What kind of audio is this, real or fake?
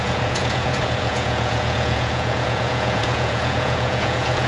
fake